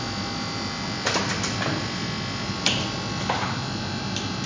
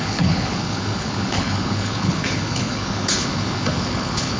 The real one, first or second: first